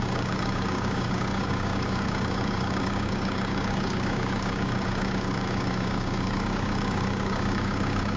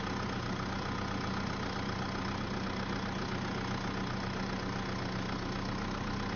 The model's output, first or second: first